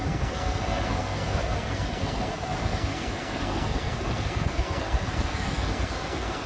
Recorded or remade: remade